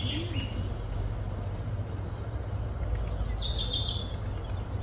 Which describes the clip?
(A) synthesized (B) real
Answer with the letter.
B